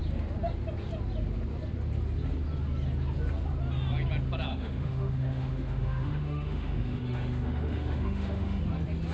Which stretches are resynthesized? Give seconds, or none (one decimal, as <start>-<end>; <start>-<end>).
4.5-8.6